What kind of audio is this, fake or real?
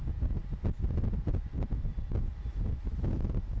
real